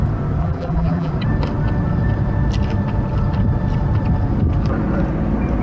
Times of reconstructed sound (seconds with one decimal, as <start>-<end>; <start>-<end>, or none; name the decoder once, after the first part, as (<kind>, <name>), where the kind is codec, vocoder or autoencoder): 0.4-1.1 (vocoder, BigVGAN v2)